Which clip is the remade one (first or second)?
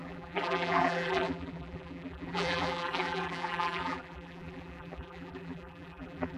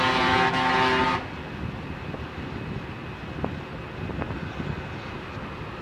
first